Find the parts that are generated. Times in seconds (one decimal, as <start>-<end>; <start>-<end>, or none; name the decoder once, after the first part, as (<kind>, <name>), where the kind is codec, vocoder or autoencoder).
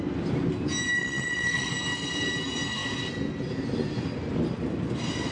1.0-1.7 (vocoder, WaveNeXt)